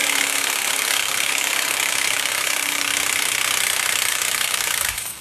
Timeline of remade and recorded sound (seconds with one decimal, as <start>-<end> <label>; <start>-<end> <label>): 0.0-2.9 remade; 2.9-4.1 recorded; 4.1-5.2 remade